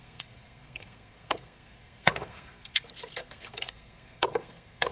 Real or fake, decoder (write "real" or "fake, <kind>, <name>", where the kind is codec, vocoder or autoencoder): fake, codec, SNAC